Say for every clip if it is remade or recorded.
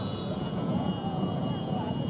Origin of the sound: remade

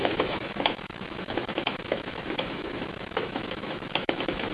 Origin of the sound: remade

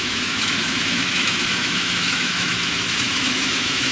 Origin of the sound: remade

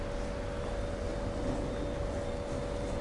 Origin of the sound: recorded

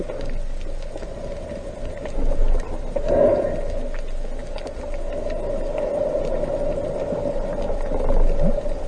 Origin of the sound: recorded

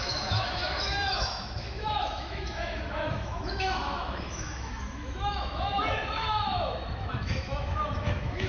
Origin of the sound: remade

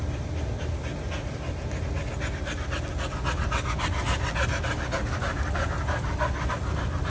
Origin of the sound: recorded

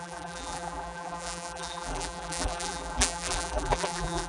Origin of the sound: remade